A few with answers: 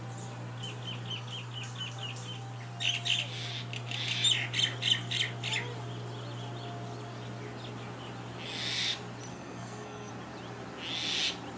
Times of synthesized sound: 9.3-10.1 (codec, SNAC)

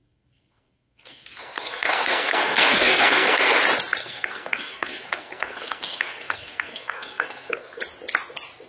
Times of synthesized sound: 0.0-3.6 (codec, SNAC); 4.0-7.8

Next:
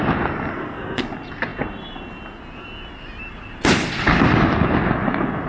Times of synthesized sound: 0.5-1.0 (codec, SNAC)

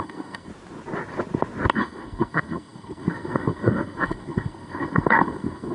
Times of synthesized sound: 0.0-0.5 (codec, SNAC); 1.7-5.7

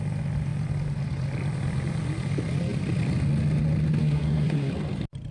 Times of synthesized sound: 4.0-4.7 (codec, SNAC)